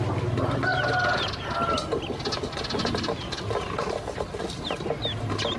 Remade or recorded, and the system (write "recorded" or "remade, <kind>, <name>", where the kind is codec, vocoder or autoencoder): recorded